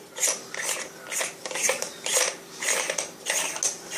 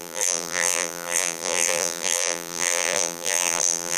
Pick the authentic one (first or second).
first